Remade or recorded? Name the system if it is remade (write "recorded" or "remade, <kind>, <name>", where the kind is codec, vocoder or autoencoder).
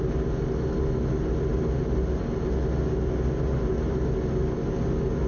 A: recorded